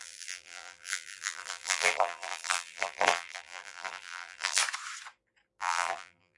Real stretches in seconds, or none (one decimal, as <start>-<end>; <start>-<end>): 4.6-5.6